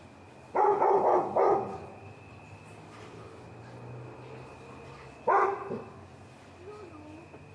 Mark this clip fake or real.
real